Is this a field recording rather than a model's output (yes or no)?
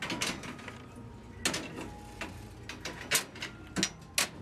yes